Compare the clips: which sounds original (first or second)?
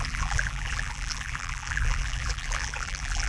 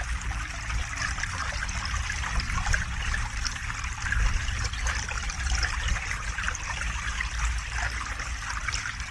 second